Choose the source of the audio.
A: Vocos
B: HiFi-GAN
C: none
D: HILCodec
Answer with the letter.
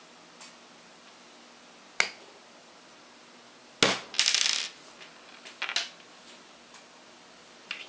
C